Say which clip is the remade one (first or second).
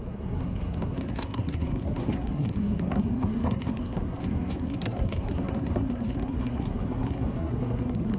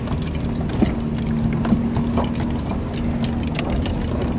first